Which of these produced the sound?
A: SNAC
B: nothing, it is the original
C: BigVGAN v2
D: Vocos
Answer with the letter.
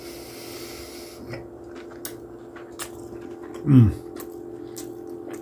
B